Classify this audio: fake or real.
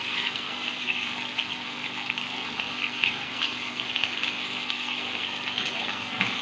fake